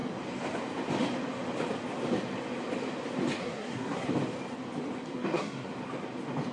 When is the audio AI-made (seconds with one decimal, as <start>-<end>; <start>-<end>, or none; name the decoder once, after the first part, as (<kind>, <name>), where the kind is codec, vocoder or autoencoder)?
3.4-4.1 (codec, SNAC); 5.0-5.7